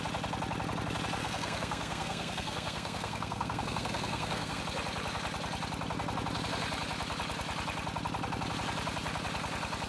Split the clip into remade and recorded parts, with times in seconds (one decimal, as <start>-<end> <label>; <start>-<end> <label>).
0.0-1.2 recorded; 1.2-4.6 remade; 4.6-9.9 recorded